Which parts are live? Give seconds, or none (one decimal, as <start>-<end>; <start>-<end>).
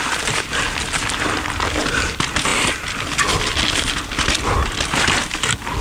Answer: 0.0-5.8